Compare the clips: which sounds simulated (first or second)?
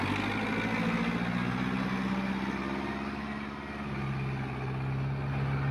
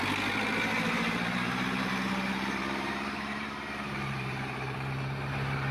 second